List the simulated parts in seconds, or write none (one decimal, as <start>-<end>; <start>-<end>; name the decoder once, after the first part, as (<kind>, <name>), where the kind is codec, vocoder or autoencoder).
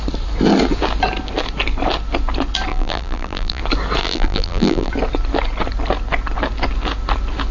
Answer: 2.7-3.6 (vocoder, BigVGAN v2); 4.0-4.9